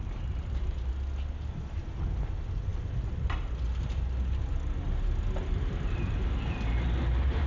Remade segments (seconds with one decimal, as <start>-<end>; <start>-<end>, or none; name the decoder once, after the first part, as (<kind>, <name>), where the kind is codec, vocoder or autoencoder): 0.0-0.9 (vocoder, BigVGAN v2); 5.4-7.1